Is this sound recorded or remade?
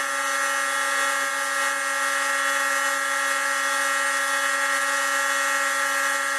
recorded